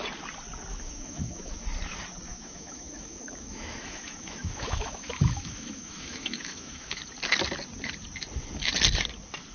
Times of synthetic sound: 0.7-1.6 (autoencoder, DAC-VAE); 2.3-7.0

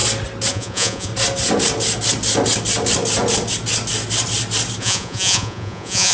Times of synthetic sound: 0.5-1.1 (vocoder, Vocos); 4.8-6.1

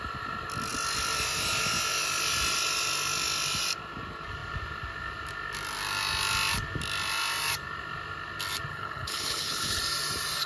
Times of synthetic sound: 8.7-9.8 (codec, HILCodec)

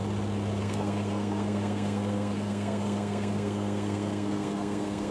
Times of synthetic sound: 0.6-5.1 (codec, SNAC)

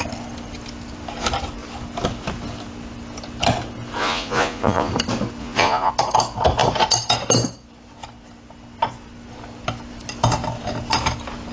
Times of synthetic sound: 4.0-4.9 (vocoder, Vocos); 5.4-5.9

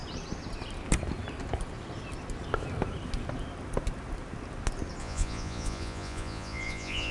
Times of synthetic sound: 5.0-7.1 (vocoder, Vocos)